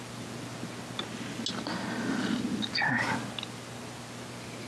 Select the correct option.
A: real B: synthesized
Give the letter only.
A